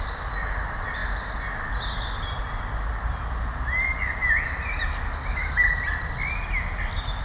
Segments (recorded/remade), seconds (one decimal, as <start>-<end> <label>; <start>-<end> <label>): 0.0-7.2 recorded